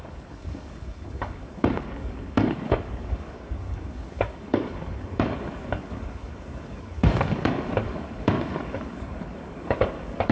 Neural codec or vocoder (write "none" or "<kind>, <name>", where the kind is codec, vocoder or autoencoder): codec, DAC